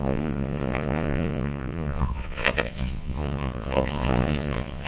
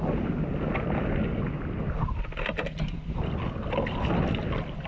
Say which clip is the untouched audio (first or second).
second